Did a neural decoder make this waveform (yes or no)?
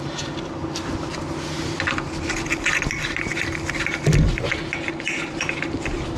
yes